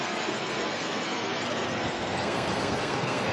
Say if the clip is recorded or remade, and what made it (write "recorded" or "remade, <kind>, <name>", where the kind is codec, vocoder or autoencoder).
remade, codec, SNAC